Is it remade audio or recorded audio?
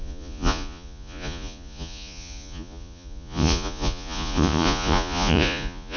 remade